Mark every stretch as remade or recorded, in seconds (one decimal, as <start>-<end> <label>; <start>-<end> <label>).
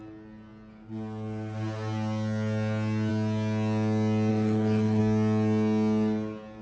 0.0-4.3 recorded; 4.3-5.0 remade; 5.0-6.6 recorded